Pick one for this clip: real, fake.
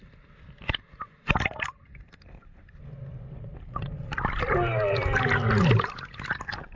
real